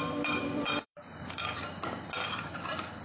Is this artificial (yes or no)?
yes